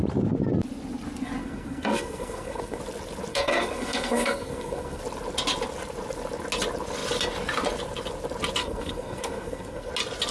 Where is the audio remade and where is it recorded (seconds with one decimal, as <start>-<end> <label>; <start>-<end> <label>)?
0.0-1.4 recorded; 1.4-2.8 remade; 2.8-3.3 recorded; 3.3-5.0 remade; 5.0-8.6 recorded; 8.6-9.9 remade; 9.9-10.3 recorded